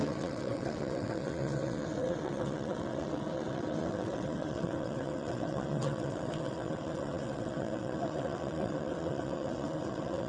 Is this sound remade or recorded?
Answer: remade